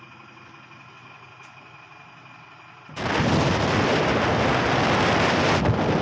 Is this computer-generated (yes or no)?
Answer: no